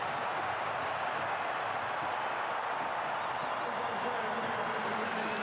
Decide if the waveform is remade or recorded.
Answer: recorded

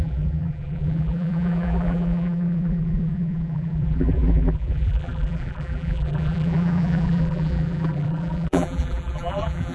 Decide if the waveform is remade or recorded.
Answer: remade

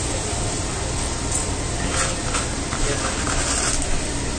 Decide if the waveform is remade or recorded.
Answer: recorded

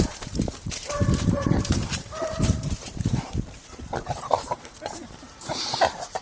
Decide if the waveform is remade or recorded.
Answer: remade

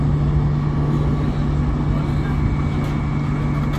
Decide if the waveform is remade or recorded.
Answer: recorded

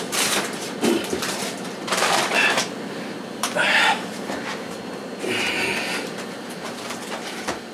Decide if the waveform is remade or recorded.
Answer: remade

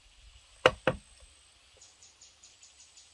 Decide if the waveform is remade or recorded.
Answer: remade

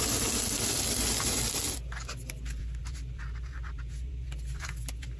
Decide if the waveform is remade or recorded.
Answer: recorded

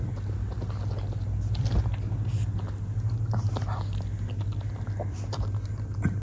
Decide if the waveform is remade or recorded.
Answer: recorded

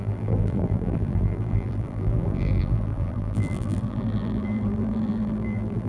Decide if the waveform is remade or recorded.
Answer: remade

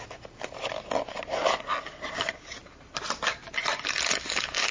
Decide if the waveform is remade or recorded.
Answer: recorded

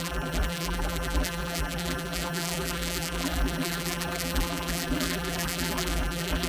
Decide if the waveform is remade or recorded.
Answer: remade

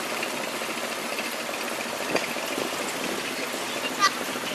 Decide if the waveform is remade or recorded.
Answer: remade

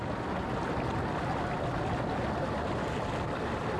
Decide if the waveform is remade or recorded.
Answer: recorded